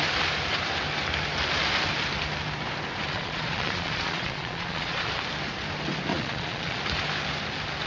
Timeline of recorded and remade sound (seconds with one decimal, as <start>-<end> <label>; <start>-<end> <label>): 0.0-3.1 recorded; 3.1-5.1 remade; 5.1-6.1 recorded; 6.1-6.8 remade; 6.8-7.9 recorded